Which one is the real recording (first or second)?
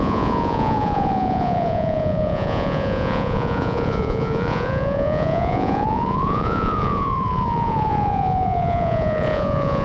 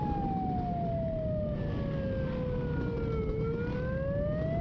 second